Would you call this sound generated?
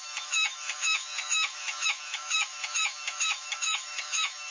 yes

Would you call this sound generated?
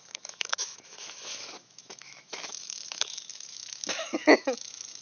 yes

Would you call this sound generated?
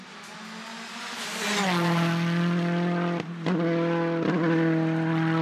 no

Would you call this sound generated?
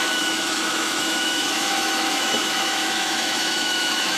yes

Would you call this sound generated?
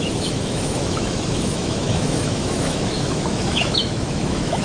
yes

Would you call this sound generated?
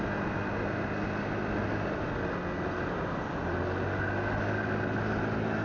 no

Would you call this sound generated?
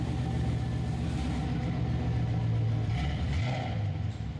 no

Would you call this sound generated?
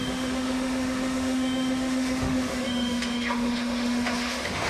yes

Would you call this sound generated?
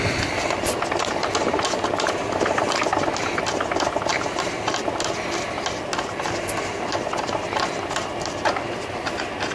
no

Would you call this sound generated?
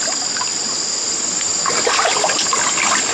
no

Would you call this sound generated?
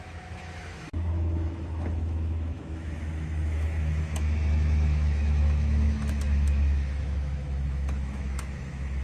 yes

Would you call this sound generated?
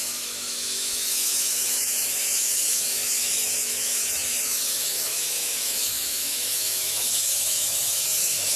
yes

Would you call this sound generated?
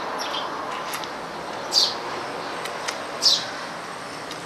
no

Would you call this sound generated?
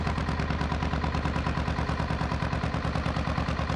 no